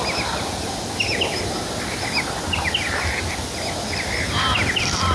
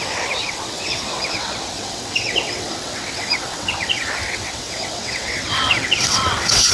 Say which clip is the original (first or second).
first